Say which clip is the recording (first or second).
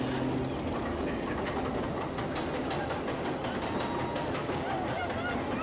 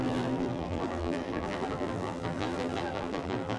first